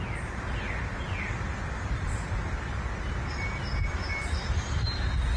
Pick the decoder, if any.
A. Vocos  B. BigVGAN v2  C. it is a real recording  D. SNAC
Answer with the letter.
C